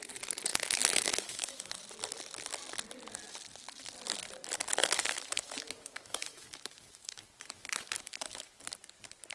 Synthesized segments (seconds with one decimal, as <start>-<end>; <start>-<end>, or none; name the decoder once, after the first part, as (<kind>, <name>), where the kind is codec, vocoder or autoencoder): 0.5-1.8 (autoencoder, DAC-VAE); 4.8-8.6